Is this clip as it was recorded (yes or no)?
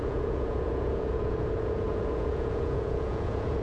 no